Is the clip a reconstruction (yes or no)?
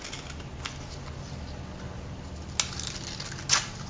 no